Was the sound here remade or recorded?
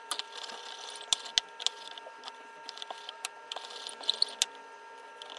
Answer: recorded